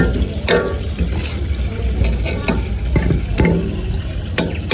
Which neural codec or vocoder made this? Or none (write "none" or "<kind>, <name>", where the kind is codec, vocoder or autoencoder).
none